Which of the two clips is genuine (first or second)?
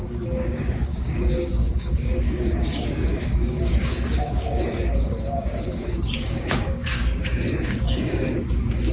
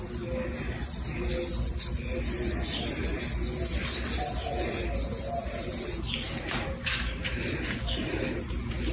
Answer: second